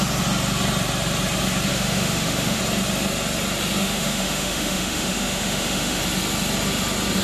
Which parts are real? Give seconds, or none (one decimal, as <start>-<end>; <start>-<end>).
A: 0.0-1.7; 2.6-3.8; 6.0-7.2